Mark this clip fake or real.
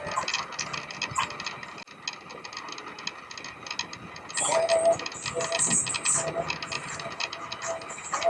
real